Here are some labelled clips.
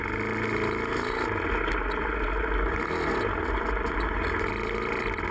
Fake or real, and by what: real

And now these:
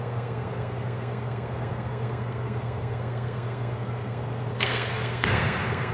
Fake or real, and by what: fake, codec, SNAC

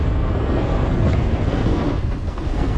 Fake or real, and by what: fake, codec, SNAC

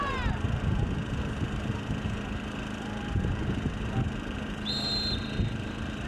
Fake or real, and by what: fake, vocoder, BigVGAN v2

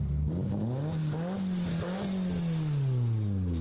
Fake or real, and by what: real